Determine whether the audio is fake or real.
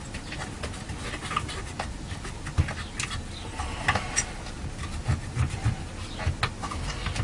real